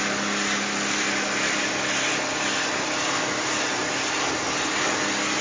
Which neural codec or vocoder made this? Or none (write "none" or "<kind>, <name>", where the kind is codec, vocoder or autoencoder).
none